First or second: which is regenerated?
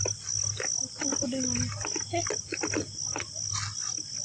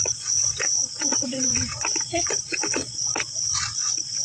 second